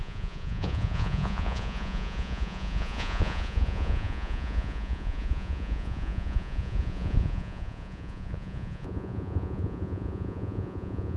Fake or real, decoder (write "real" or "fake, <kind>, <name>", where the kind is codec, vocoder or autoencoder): fake, vocoder, Vocos